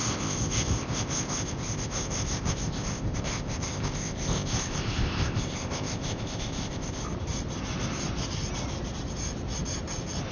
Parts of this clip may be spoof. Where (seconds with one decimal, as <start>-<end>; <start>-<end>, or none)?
0.0-7.0